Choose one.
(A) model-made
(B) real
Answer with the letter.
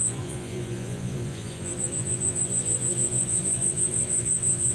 A